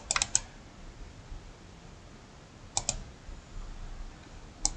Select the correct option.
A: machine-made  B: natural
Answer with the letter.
B